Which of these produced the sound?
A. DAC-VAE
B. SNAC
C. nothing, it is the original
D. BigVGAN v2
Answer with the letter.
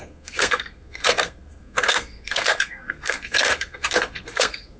B